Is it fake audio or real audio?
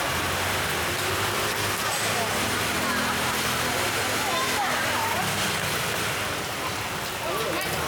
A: real